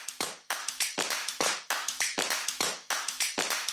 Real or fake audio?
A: fake